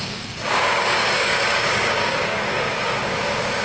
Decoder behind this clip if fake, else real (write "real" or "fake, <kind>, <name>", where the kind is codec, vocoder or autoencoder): fake, codec, DAC